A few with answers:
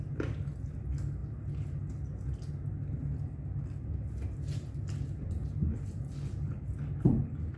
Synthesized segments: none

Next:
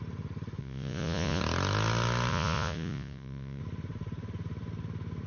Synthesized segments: 0.6-1.4 (vocoder, Vocos); 2.3-3.6

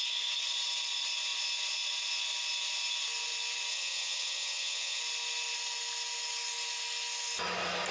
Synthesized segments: 3.7-5.0 (vocoder, HiFi-GAN)

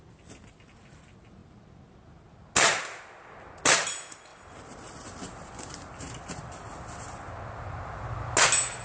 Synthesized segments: none

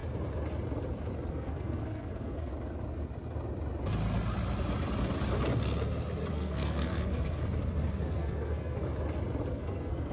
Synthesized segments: 1.3-2.5 (codec, SNAC); 6.3-7.4; 7.9-8.9; 9.5-10.1

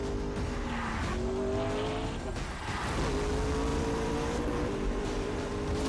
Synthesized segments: 3.7-5.5 (vocoder, BigVGAN v2)